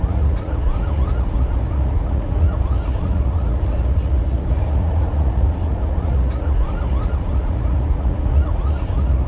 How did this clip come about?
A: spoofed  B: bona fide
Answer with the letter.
A